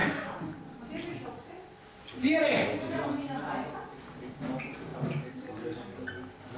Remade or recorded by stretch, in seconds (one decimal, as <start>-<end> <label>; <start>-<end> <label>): 0.0-6.6 recorded